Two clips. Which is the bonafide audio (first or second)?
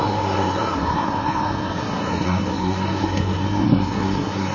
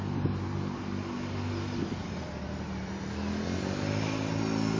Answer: second